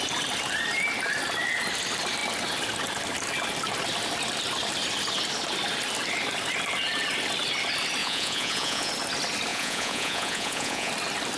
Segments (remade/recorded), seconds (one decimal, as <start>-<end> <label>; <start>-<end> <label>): 0.0-8.0 recorded; 8.0-8.9 remade; 8.9-9.5 recorded; 9.5-10.9 remade; 10.9-11.4 recorded